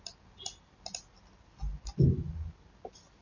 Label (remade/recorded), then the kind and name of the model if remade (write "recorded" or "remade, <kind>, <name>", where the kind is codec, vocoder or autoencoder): recorded